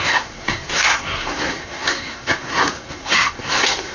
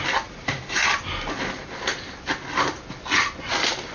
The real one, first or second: second